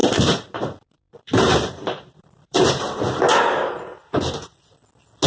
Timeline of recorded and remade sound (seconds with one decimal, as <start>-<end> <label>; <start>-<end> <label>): 0.0-3.2 remade; 3.2-5.3 recorded